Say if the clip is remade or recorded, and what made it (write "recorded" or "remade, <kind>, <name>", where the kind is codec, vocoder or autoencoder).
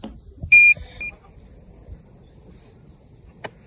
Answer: recorded